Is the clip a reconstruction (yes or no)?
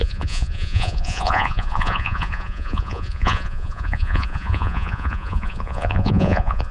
yes